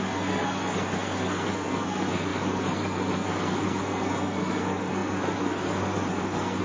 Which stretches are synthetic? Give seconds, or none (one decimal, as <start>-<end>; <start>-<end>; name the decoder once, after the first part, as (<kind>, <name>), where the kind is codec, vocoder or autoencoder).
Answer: 0.0-6.6 (codec, SNAC)